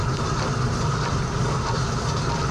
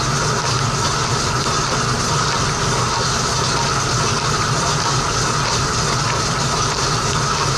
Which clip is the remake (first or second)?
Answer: first